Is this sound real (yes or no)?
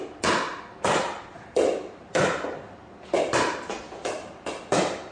yes